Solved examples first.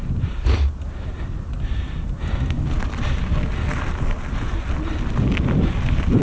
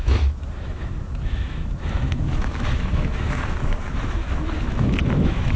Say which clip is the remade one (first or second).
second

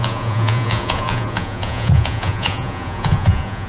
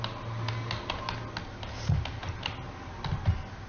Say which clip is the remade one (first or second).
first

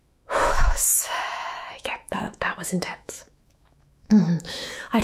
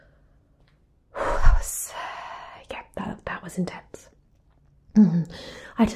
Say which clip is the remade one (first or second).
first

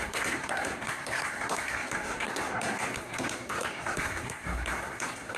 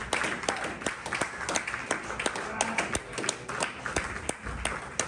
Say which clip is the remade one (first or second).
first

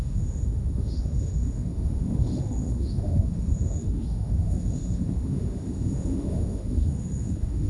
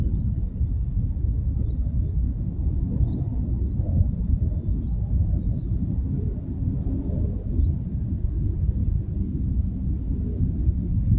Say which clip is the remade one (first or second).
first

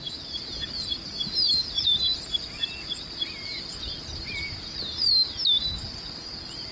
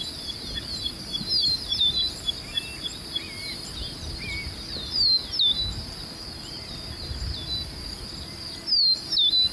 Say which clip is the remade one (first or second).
first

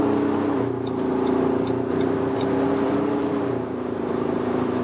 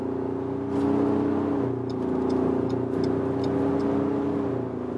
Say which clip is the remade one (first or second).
first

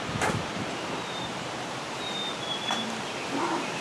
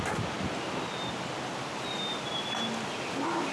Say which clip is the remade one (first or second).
first